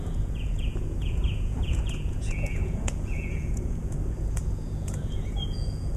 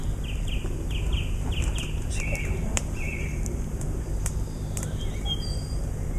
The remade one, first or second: first